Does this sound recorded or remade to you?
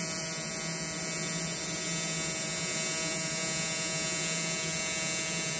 recorded